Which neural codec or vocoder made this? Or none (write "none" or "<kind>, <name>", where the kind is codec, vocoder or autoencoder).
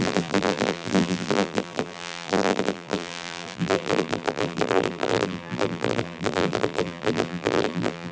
vocoder, BigVGAN v2